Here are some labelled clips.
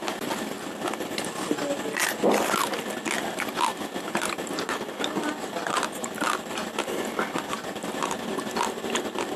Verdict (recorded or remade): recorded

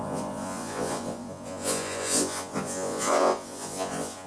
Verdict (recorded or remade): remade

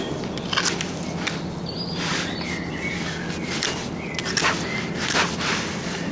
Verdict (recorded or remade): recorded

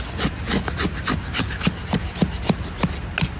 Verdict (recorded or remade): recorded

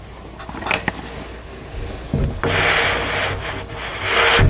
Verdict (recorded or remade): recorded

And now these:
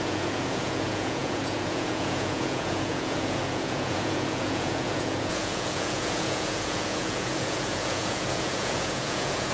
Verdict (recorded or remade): remade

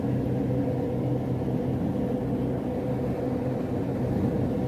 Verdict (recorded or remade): recorded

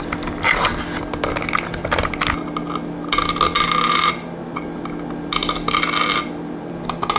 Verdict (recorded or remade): recorded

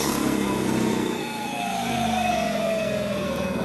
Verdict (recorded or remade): remade